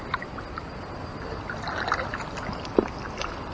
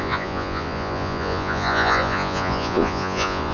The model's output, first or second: second